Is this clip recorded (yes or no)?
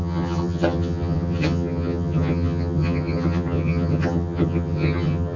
no